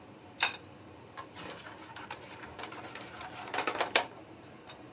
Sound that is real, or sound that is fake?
fake